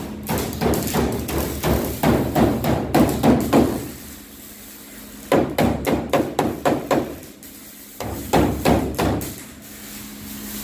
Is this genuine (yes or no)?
yes